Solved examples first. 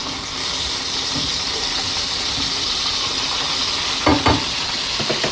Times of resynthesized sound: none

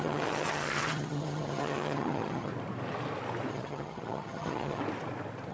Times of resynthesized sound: 0.0-2.5 (vocoder, HiFi-GAN); 3.5-4.8

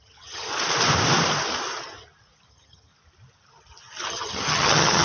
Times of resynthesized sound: 0.0-0.5 (vocoder, HiFi-GAN); 2.5-2.9; 4.1-5.0

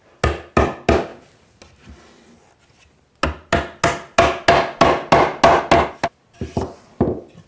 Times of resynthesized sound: none

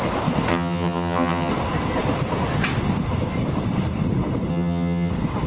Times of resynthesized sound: 0.5-1.5 (vocoder, HiFi-GAN); 4.5-5.1

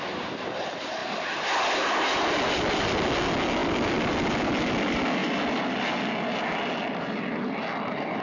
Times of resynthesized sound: none